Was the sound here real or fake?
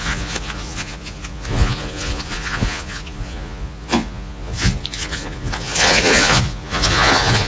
fake